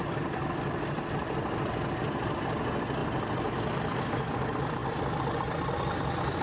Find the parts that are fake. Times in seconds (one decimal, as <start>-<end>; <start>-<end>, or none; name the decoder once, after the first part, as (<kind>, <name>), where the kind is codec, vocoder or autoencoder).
none